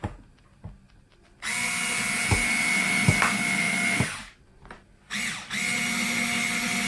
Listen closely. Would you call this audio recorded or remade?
recorded